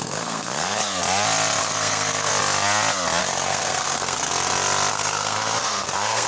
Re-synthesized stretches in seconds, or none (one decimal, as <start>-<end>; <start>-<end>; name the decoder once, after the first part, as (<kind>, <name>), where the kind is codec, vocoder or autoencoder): 0.0-0.8 (codec, SNAC); 1.6-2.3; 3.2-4.3; 4.9-6.3